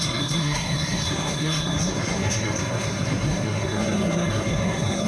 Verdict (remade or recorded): remade